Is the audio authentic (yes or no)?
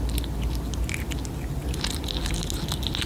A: yes